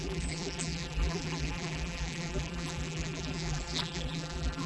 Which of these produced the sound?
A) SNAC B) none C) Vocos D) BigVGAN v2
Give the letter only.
D